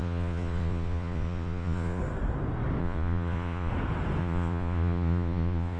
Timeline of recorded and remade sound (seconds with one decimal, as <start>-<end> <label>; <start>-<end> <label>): 0.0-2.0 remade; 2.0-2.8 recorded; 2.8-3.7 remade; 3.7-4.2 recorded; 4.2-5.8 remade